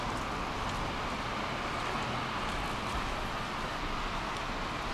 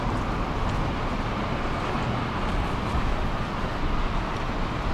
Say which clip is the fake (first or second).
second